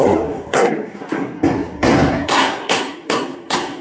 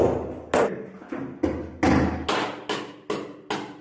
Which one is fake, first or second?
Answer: first